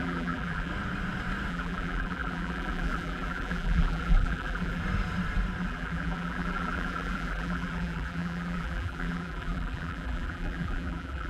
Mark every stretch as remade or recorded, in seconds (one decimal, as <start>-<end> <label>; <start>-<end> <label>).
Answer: 0.0-0.7 remade; 0.7-1.5 recorded; 1.5-4.8 remade; 4.8-5.6 recorded; 5.6-11.3 remade